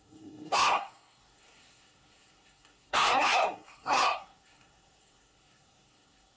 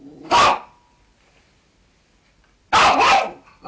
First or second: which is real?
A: second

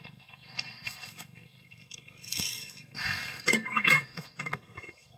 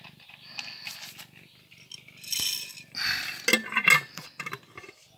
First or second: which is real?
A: second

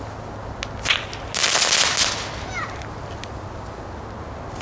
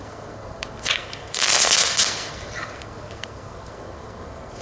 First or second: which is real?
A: first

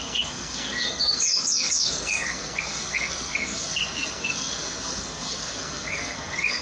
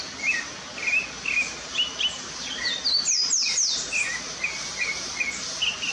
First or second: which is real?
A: second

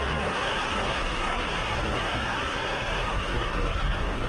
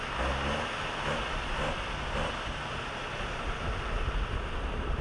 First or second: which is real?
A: second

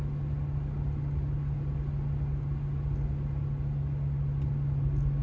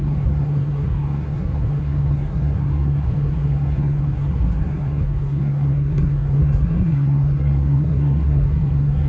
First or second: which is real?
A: first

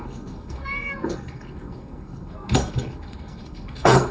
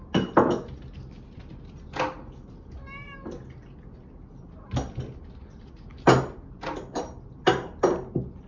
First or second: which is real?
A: second